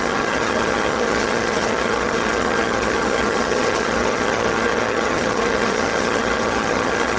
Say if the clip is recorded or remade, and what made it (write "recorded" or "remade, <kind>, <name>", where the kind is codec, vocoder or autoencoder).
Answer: remade, vocoder, HiFi-GAN